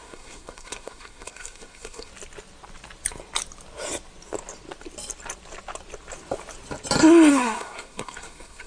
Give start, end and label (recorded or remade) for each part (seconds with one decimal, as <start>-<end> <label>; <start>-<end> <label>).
0.0-2.1 remade; 2.1-7.3 recorded; 7.3-8.7 remade